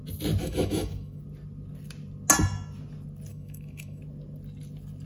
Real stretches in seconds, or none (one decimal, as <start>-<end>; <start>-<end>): 0.0-0.4; 1.2-3.3; 4.0-5.1